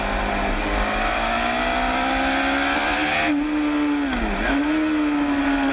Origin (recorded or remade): recorded